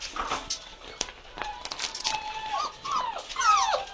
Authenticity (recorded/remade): recorded